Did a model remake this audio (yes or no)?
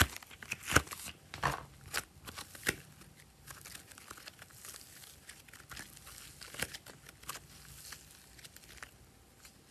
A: no